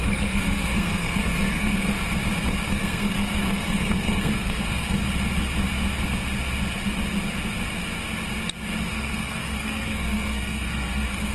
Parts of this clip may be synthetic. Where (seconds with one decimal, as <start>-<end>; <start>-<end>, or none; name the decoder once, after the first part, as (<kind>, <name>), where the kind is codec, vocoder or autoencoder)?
0.0-1.9 (codec, SNAC); 2.7-5.0; 8.9-11.3